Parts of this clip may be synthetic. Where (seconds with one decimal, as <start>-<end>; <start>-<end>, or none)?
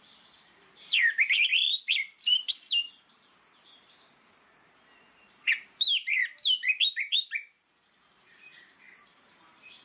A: 0.0-9.8